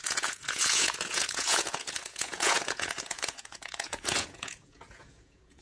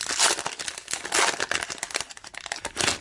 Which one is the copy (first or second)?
first